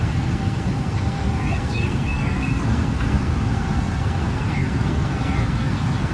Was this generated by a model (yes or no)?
yes